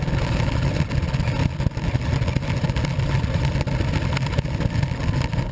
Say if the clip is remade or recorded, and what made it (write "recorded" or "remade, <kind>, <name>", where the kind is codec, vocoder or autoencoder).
recorded